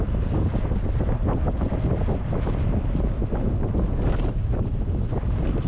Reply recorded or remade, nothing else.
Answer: recorded